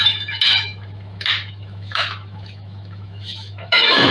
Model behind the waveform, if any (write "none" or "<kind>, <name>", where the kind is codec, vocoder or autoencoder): autoencoder, DAC-VAE